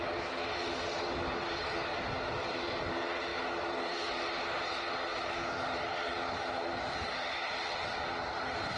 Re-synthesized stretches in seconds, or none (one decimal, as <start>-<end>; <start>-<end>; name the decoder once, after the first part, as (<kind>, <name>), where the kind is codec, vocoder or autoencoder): none